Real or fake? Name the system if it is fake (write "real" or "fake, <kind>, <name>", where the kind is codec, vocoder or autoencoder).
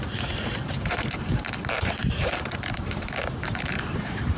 fake, vocoder, BigVGAN v2